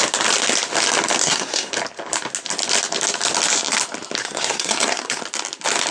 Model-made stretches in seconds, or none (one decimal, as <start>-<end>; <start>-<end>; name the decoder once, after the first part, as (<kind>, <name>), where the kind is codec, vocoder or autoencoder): 1.2-1.7 (codec, SNAC); 4.2-5.2